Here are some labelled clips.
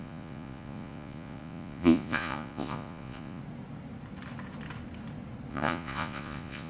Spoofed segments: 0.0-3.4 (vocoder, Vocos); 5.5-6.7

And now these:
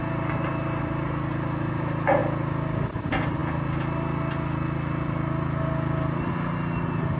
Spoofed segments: none

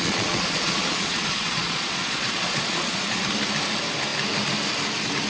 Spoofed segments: 0.0-3.2 (vocoder, Vocos)

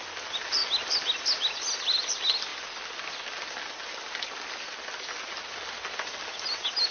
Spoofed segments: none

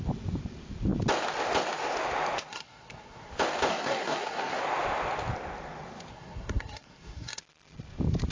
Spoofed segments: 2.5-3.3 (codec, SNAC); 3.7-4.6; 6.1-7.4

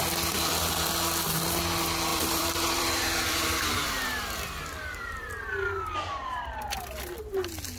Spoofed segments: 2.1-5.3 (vocoder, BigVGAN v2)

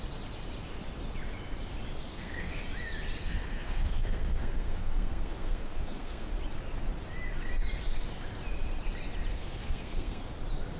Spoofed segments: 2.1-2.6 (codec, SNAC); 3.2-6.3; 9.3-10.2

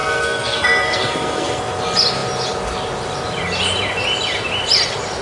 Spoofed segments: 0.0-1.6 (codec, SNAC)